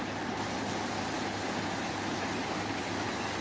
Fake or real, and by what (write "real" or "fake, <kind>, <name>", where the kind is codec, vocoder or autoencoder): real